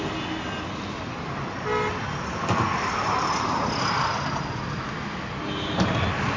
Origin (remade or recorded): recorded